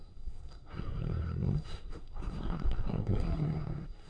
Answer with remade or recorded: remade